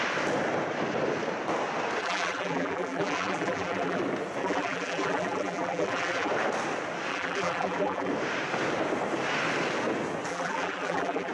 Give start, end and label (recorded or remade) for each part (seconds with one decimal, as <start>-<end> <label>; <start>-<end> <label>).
0.0-2.0 recorded; 2.0-4.0 remade; 4.0-4.4 recorded; 4.4-6.3 remade; 6.3-7.1 recorded; 7.1-8.1 remade; 8.1-10.3 recorded; 10.3-11.3 remade